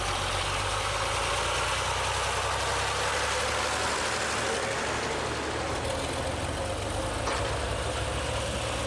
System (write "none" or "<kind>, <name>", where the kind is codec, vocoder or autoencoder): none